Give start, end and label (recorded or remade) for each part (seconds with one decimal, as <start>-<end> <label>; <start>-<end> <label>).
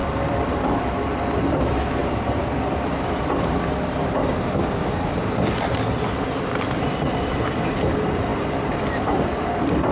0.0-0.9 remade; 0.9-2.0 recorded; 2.0-6.2 remade; 6.2-8.3 recorded; 8.3-9.5 remade; 9.5-9.9 recorded